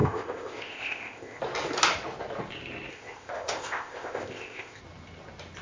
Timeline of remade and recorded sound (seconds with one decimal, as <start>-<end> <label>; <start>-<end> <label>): 0.0-1.4 remade; 1.4-2.9 recorded; 2.9-4.8 remade; 4.8-5.6 recorded